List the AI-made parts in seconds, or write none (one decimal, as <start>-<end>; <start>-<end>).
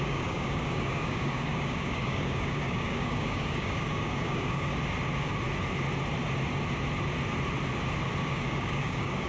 0.0-4.7; 8.2-9.3